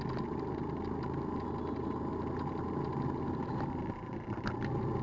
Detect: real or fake real